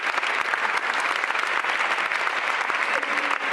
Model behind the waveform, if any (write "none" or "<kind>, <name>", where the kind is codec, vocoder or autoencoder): none